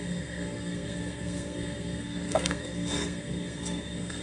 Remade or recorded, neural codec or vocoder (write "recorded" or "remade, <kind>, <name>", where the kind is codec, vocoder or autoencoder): remade, codec, SNAC